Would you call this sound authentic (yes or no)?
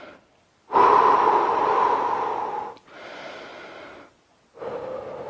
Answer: yes